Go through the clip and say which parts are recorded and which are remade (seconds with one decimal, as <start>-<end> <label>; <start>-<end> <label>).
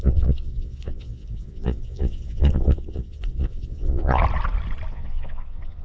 0.0-4.2 remade; 4.2-4.9 recorded; 4.9-5.8 remade